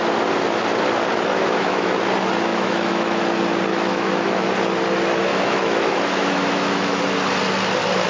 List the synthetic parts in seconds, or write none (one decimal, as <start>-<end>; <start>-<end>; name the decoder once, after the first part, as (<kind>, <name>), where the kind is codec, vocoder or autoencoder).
1.3-1.9 (autoencoder, DAC-VAE); 2.5-3.2; 3.7-4.5; 5.3-7.0